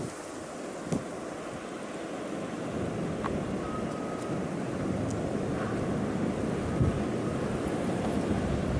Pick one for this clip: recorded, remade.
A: recorded